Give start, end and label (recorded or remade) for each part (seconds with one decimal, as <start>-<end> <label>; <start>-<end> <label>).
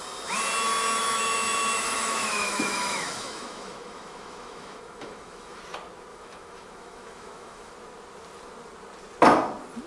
0.0-1.0 recorded; 1.0-5.6 remade; 5.6-6.1 recorded; 6.1-7.7 remade; 7.7-9.9 recorded